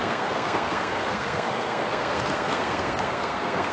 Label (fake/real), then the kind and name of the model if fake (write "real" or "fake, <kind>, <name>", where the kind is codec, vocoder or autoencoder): fake, codec, SNAC